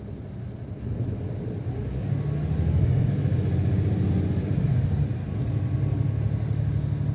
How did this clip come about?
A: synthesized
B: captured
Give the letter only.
B